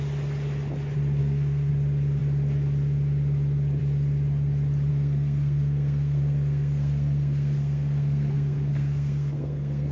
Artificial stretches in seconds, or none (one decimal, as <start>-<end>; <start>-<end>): 1.2-1.7; 4.9-9.9